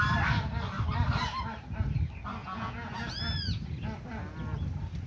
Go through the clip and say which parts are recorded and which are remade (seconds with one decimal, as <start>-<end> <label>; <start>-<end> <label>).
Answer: 0.0-2.4 recorded; 2.4-3.1 remade; 3.1-5.1 recorded

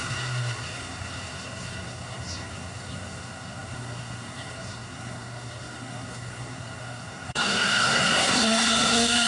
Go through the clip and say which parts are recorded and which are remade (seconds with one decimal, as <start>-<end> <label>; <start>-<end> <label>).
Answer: 0.0-9.3 remade

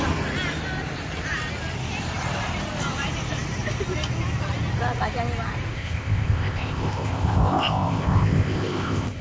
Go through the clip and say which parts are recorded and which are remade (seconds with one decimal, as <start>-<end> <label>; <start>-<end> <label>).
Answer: 0.0-5.7 recorded; 5.7-9.2 remade